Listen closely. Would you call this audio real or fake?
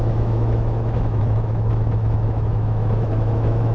fake